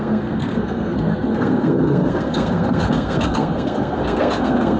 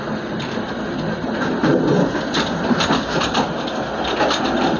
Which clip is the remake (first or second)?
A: first